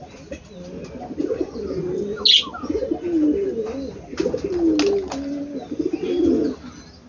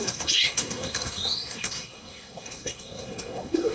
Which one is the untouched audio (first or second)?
first